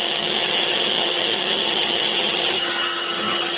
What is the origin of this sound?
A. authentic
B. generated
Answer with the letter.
B